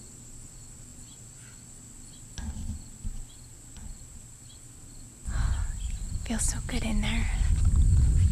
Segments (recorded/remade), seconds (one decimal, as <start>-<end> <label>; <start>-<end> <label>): 0.0-8.3 recorded